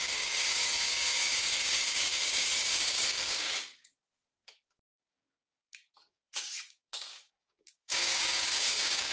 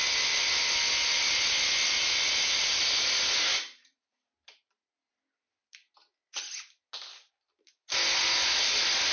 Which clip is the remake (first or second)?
first